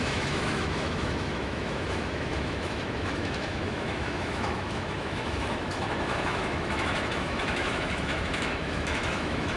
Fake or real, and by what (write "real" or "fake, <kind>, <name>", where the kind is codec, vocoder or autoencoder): fake, autoencoder, DAC-VAE